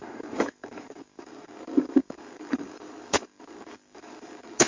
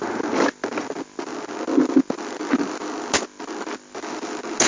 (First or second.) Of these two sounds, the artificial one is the first